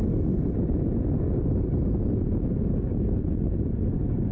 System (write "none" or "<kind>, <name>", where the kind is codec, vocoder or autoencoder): none